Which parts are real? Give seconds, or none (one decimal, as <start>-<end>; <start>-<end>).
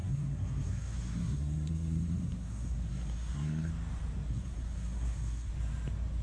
3.7-4.3; 5.5-6.2